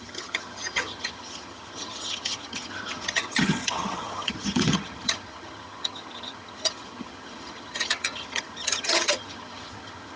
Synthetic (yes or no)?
yes